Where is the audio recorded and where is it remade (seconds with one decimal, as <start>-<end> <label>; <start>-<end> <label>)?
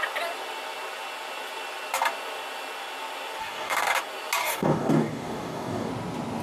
0.0-3.4 recorded; 3.4-3.9 remade; 3.9-4.4 recorded; 4.4-5.9 remade; 5.9-6.4 recorded